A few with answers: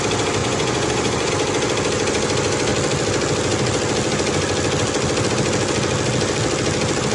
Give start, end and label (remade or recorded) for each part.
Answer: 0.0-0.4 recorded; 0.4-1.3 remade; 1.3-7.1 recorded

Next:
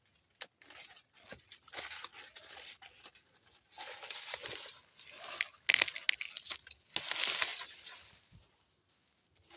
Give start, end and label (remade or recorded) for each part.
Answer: 0.0-9.6 recorded

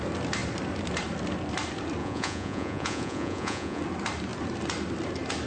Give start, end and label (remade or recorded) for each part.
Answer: 0.0-2.0 recorded; 2.0-3.8 remade; 3.8-5.5 recorded

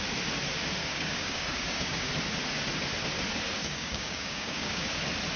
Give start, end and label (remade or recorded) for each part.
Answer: 0.0-0.8 recorded; 0.8-2.1 remade; 2.1-3.6 recorded; 3.6-4.9 remade; 4.9-5.4 recorded